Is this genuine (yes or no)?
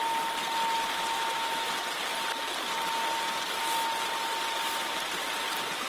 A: yes